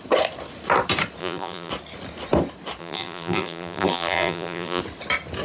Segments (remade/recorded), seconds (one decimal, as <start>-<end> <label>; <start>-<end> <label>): 0.0-1.2 recorded; 1.2-1.7 remade; 1.7-2.8 recorded; 2.8-4.8 remade; 4.8-5.4 recorded